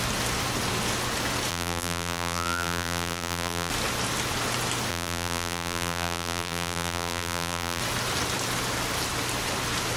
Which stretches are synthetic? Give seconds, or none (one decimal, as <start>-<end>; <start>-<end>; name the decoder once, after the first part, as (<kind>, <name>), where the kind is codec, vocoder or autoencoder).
1.5-3.7 (vocoder, BigVGAN v2); 4.9-7.8